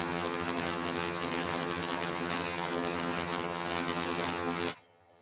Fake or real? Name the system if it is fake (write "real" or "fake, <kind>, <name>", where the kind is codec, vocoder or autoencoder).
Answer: fake, vocoder, HiFi-GAN